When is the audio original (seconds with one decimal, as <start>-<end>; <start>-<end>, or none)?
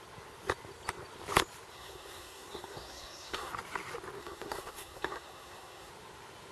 0.0-1.7; 3.5-4.2; 5.9-6.5